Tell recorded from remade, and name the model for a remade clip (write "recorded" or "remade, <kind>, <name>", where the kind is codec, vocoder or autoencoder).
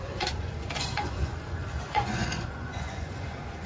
remade, vocoder, Vocos